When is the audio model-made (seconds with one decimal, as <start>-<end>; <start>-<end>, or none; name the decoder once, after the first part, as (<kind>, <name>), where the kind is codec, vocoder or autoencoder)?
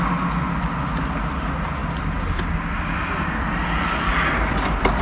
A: none